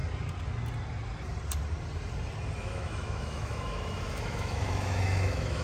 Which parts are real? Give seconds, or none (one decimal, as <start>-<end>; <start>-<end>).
0.0-2.6